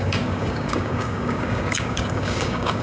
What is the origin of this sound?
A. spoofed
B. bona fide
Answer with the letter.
A